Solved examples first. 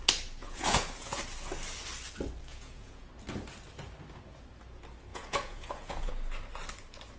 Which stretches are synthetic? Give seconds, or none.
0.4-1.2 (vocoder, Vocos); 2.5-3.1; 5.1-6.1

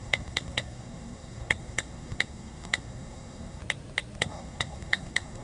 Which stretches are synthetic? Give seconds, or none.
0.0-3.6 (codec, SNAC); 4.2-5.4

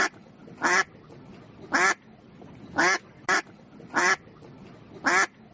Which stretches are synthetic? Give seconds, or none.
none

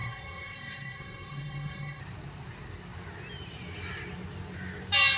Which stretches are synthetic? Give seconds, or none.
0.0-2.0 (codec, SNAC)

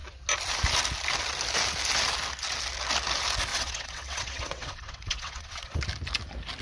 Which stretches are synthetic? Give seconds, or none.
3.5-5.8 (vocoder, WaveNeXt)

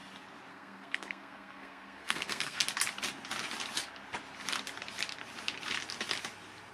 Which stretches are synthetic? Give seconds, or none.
0.5-2.6 (codec, SNAC)

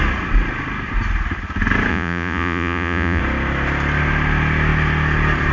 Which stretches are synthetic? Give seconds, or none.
1.9-3.2 (vocoder, Vocos)